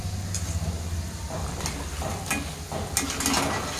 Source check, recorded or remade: recorded